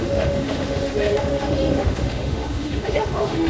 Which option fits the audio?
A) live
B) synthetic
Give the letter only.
B